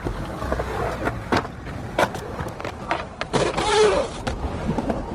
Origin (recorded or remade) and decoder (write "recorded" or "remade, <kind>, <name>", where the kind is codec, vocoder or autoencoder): recorded